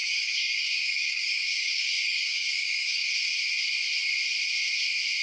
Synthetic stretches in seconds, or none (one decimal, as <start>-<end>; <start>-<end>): 0.0-3.1